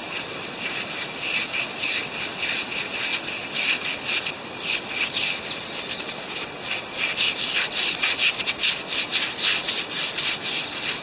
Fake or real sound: real